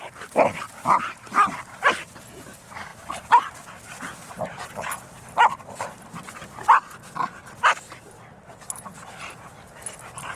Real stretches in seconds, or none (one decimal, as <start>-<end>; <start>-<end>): 0.0-2.9; 3.5-10.4